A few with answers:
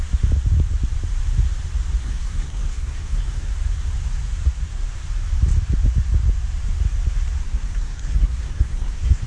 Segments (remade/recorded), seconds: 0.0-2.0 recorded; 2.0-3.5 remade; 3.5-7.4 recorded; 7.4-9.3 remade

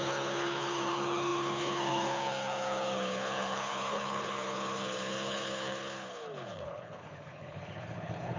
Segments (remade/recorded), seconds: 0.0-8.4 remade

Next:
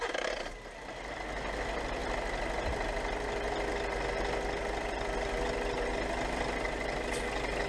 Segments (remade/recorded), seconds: 0.0-7.7 recorded

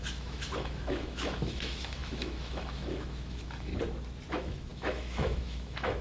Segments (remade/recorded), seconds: 0.0-3.7 remade; 3.7-4.3 recorded; 4.3-6.0 remade

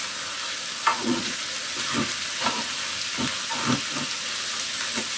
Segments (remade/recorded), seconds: 0.0-0.9 recorded; 0.9-1.4 remade; 1.4-5.2 recorded

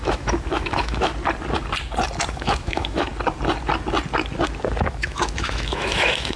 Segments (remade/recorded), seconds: 0.0-1.1 remade; 1.1-2.3 recorded; 2.3-3.1 remade; 3.1-4.8 recorded; 4.8-6.4 remade

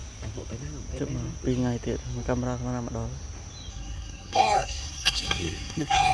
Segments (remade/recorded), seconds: 0.0-3.7 recorded; 3.7-6.1 remade

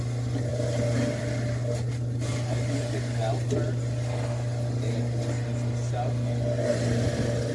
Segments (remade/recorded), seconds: 0.0-7.5 recorded